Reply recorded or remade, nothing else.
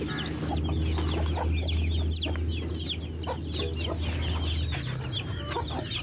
recorded